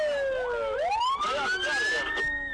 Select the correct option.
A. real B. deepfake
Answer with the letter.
A